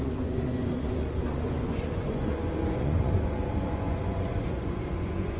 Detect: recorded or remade remade